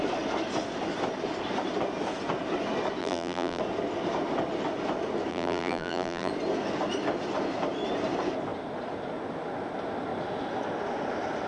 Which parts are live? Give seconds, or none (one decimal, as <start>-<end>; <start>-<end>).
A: 0.0-3.0; 3.6-5.3; 6.3-11.5